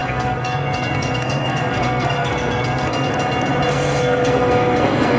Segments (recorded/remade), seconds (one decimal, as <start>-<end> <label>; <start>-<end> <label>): 0.0-3.1 remade; 3.1-3.7 recorded; 3.7-5.2 remade